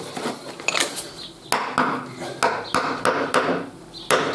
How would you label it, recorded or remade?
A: recorded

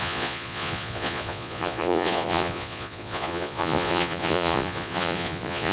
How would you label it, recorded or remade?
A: remade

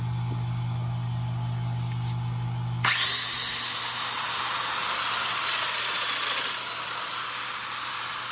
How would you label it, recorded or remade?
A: recorded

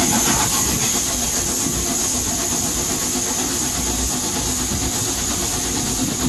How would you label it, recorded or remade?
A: recorded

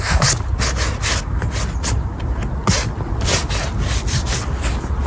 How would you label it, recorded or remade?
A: recorded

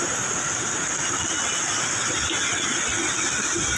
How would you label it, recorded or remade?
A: recorded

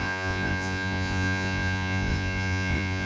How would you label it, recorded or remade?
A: remade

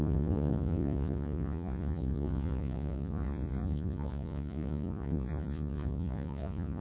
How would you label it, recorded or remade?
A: remade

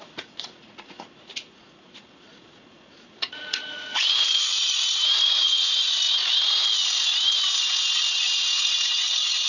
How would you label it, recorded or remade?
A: remade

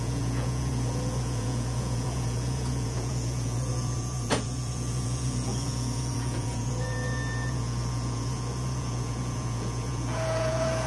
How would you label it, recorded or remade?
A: remade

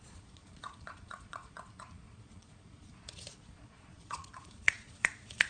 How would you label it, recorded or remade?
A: remade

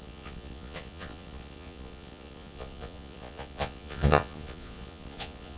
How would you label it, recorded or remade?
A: remade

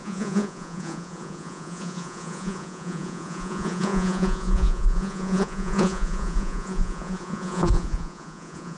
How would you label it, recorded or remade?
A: remade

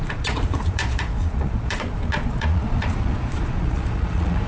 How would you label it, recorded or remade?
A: remade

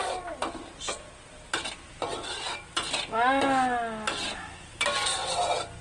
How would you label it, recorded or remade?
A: recorded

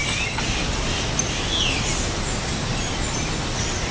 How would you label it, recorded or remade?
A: recorded